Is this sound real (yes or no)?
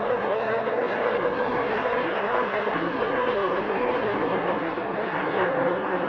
no